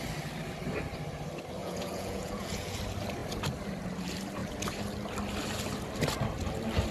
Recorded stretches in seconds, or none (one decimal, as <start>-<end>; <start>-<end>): 0.0-1.6; 2.8-6.9